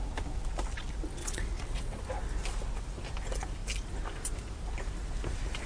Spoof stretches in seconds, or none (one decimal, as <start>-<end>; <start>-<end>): 1.2-2.0